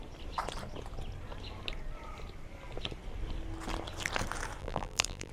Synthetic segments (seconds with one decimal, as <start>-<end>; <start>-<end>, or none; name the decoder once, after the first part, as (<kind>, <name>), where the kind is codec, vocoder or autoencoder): 4.6-5.3 (vocoder, BigVGAN v2)